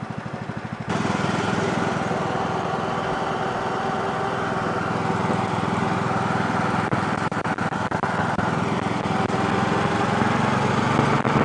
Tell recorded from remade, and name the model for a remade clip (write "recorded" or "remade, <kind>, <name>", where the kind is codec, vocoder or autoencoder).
recorded